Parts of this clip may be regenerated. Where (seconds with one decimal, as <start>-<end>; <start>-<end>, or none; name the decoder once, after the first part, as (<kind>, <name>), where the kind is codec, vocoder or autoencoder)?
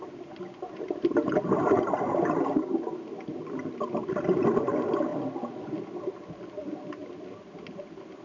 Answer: none